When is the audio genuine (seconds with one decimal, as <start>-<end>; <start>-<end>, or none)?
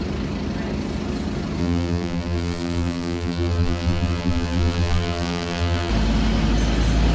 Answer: 0.0-1.6; 5.9-7.1